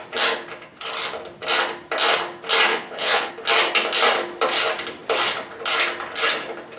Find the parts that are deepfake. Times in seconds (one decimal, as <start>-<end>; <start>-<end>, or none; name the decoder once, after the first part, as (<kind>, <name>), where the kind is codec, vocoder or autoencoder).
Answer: 2.7-3.3 (vocoder, Vocos)